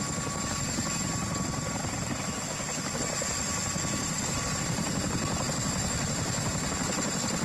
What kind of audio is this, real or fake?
real